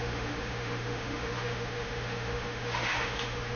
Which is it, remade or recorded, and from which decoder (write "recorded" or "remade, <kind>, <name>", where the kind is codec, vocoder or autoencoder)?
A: remade, autoencoder, DAC-VAE